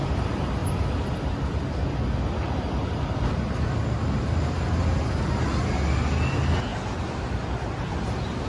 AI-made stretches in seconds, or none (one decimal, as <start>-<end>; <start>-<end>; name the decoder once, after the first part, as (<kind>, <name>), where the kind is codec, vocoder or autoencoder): none